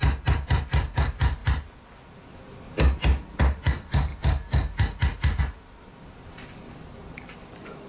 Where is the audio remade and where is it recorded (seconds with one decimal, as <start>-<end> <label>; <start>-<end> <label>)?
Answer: 0.0-7.9 recorded

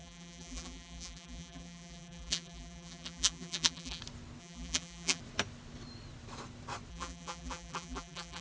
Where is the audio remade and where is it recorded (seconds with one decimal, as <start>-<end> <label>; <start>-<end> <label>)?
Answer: 0.0-4.0 remade; 4.0-4.4 recorded; 4.4-5.2 remade; 5.2-6.9 recorded; 6.9-8.4 remade

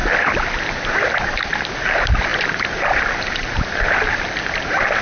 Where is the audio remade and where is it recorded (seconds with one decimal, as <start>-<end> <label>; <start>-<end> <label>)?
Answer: 0.0-5.0 recorded

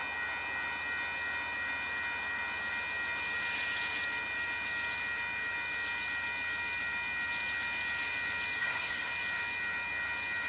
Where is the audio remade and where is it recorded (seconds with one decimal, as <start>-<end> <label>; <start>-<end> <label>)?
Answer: 0.0-8.6 recorded; 8.6-9.1 remade; 9.1-10.5 recorded

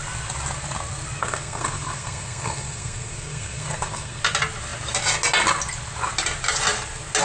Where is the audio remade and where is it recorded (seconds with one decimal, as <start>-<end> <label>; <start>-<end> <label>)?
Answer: 0.0-1.2 recorded; 1.2-4.2 remade; 4.2-7.2 recorded

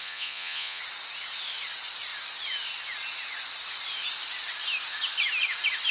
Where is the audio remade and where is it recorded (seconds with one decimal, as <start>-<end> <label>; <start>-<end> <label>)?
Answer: 0.0-0.8 remade; 0.8-5.9 recorded